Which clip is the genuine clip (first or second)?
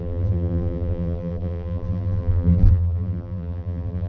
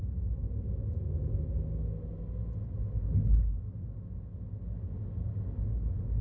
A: second